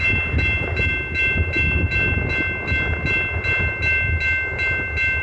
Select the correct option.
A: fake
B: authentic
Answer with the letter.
B